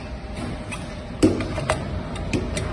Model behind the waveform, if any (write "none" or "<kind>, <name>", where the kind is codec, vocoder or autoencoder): none